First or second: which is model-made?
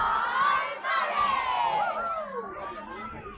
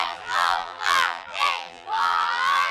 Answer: second